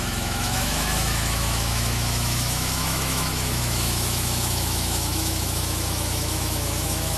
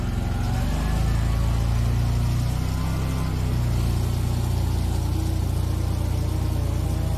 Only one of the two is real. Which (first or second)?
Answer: second